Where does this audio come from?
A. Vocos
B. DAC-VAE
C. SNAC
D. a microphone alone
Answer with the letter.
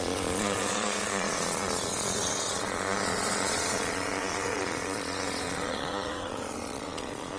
A